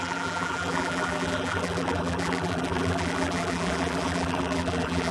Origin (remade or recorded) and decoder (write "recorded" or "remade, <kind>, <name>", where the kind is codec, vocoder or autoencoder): remade, vocoder, BigVGAN v2